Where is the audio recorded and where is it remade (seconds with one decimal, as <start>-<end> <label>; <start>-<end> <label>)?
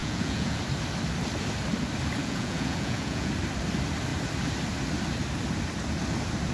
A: 0.0-0.6 remade; 0.6-2.2 recorded; 2.2-3.3 remade; 3.3-6.5 recorded